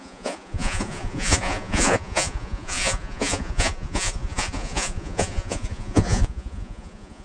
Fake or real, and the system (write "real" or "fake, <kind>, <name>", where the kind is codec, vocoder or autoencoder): fake, vocoder, Vocos